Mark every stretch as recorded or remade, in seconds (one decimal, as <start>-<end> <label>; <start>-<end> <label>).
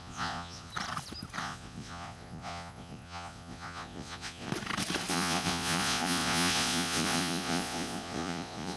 0.0-0.7 remade; 0.7-1.4 recorded; 1.4-4.5 remade; 4.5-5.1 recorded; 5.1-8.8 remade